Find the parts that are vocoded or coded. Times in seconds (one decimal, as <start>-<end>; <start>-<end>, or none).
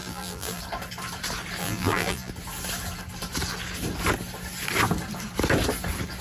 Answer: 0.0-0.6; 1.6-2.3